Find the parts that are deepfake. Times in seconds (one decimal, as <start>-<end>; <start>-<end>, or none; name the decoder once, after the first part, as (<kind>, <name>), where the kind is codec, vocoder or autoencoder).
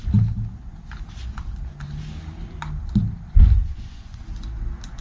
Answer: 3.6-4.2 (vocoder, Vocos)